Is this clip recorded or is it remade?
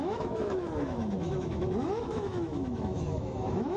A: remade